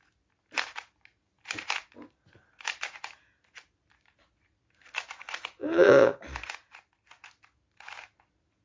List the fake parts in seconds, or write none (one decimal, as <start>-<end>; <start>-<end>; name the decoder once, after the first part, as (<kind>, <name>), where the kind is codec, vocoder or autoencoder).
5.6-6.2 (vocoder, Vocos)